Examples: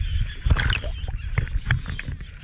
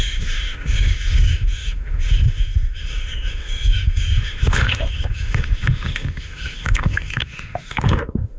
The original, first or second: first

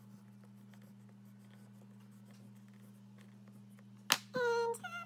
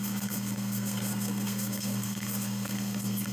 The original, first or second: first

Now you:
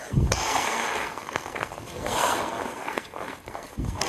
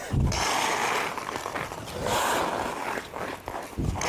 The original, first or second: second